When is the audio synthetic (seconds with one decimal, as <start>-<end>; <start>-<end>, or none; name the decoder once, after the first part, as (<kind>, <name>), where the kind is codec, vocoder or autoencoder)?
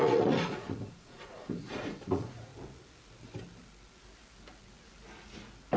0.0-2.5 (vocoder, Vocos)